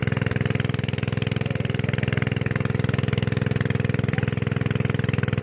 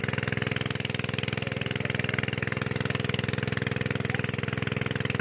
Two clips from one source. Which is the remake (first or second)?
first